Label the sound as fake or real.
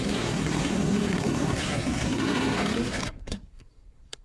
fake